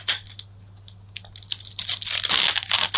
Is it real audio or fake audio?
real